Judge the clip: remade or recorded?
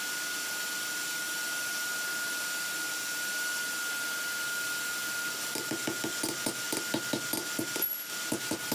recorded